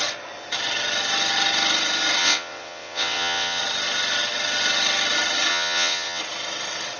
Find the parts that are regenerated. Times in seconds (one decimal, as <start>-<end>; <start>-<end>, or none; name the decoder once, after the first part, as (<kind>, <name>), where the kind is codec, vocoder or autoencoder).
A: 2.2-3.6 (vocoder, WaveNeXt); 5.5-6.2

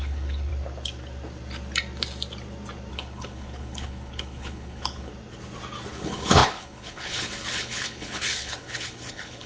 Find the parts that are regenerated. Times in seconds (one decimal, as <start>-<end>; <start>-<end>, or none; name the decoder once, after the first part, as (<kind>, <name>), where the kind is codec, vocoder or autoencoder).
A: 0.0-0.5 (codec, HILCodec); 2.9-5.1; 5.9-9.5

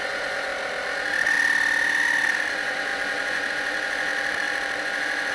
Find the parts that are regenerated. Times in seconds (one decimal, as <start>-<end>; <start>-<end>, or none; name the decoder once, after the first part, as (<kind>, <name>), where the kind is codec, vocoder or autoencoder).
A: 0.0-0.5 (vocoder, Vocos); 2.5-4.1; 4.8-5.3